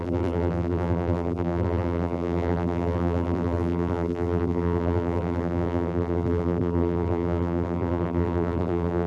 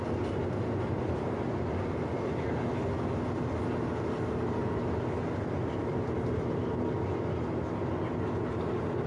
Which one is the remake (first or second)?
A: first